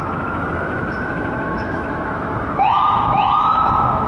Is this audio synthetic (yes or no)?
yes